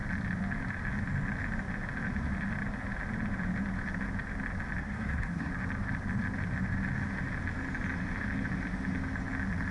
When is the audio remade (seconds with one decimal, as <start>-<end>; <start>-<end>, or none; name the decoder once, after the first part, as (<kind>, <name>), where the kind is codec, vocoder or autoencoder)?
4.8-5.5 (codec, SNAC)